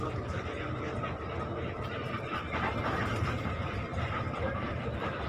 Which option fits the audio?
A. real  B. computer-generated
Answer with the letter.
B